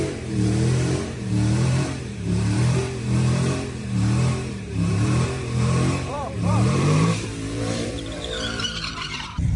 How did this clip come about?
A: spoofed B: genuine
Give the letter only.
A